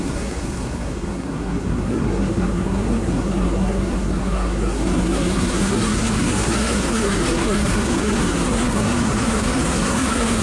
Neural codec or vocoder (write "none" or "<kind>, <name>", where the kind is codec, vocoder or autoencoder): codec, SNAC